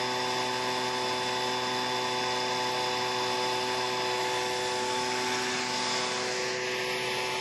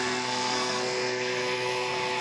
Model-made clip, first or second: second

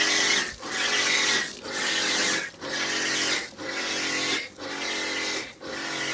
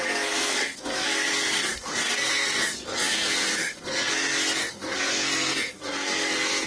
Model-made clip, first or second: second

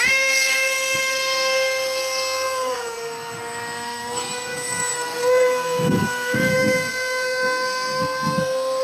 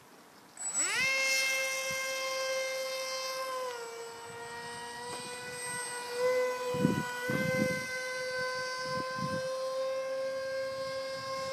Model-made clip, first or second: first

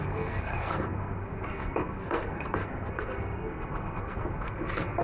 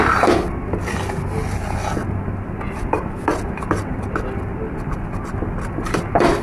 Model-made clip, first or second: first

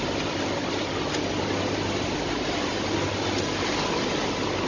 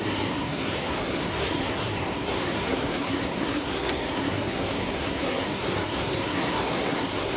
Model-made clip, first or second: second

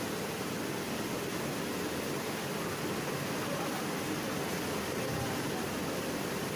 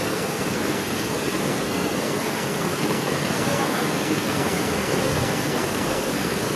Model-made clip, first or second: second